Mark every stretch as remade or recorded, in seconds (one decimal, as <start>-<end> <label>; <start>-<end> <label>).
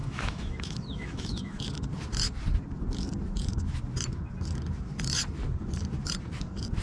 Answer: 0.0-1.6 remade; 1.6-6.8 recorded